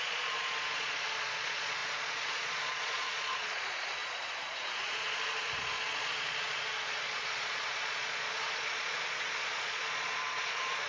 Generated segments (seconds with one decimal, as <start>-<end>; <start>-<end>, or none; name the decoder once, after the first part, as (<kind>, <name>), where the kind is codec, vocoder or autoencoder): 0.0-10.9 (vocoder, Vocos)